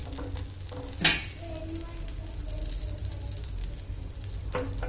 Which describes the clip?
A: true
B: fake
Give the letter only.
A